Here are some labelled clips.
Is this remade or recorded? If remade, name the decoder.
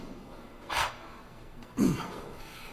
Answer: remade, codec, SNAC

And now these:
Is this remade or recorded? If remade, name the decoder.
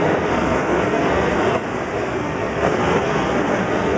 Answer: remade, codec, SNAC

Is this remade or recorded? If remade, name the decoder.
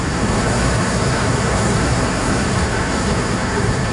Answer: remade, codec, SNAC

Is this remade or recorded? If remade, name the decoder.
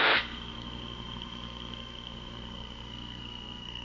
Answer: remade, codec, SNAC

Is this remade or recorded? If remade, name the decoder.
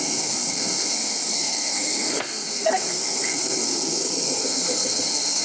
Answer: remade, codec, SNAC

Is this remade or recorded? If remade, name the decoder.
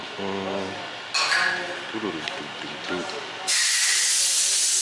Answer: recorded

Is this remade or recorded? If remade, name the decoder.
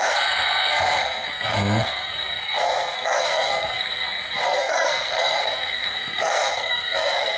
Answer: remade, codec, SNAC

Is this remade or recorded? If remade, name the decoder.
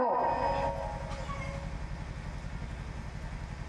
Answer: recorded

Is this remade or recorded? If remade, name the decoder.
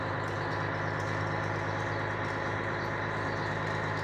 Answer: recorded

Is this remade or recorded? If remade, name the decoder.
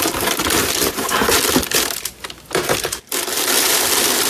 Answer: recorded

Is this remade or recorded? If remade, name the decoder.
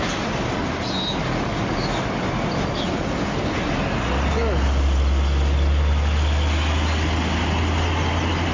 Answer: recorded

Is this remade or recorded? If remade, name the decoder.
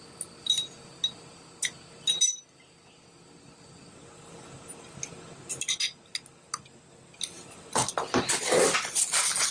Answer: recorded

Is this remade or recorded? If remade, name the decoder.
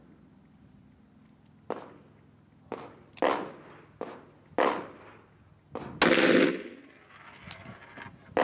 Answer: recorded